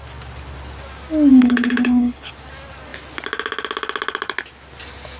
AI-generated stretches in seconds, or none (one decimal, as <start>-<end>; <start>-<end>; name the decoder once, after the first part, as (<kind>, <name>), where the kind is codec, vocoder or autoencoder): 1.3-2.3 (codec, HILCodec)